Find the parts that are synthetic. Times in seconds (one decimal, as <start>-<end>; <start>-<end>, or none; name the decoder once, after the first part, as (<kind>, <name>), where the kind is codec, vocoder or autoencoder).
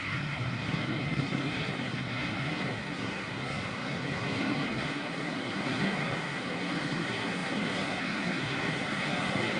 0.0-9.6 (codec, SNAC)